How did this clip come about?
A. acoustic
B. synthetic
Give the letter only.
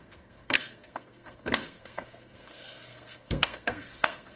B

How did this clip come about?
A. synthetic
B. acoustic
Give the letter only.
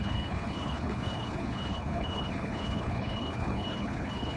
A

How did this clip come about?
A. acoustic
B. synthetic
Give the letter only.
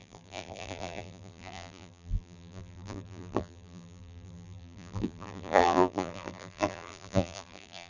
B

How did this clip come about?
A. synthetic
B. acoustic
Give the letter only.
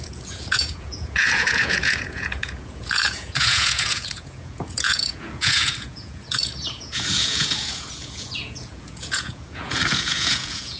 A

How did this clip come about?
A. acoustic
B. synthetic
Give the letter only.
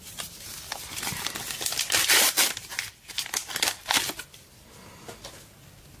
B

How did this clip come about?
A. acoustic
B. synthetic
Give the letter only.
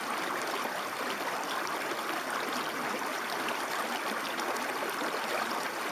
B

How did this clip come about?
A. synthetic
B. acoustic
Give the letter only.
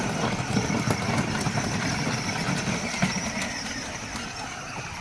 B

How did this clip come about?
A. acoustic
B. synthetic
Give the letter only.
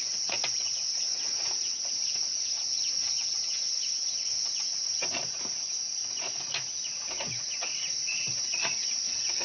B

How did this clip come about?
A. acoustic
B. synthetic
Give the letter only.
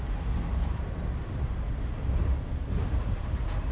A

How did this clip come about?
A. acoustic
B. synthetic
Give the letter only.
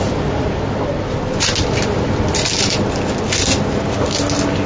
A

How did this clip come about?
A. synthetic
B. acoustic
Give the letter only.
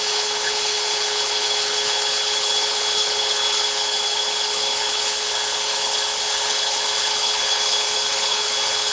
A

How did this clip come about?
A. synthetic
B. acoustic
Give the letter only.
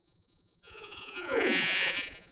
A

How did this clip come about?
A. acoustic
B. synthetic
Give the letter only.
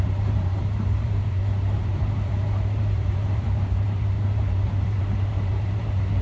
B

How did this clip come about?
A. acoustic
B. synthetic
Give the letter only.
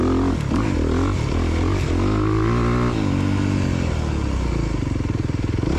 A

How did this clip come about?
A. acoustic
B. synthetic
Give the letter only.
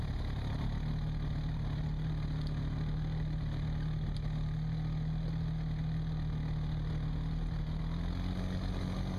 A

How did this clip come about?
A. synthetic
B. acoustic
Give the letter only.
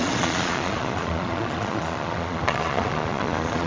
A